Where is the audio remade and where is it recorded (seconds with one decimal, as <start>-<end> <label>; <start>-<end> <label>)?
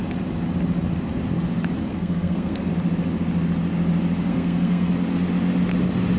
0.0-1.9 recorded; 1.9-2.7 remade; 2.7-4.3 recorded; 4.3-4.9 remade; 4.9-6.2 recorded